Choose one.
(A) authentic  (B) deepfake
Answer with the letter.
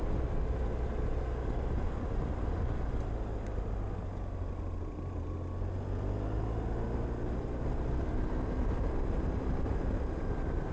A